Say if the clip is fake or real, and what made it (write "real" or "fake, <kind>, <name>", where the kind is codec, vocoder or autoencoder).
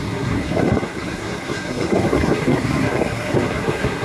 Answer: fake, codec, SNAC